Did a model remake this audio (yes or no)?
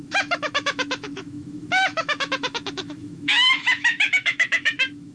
yes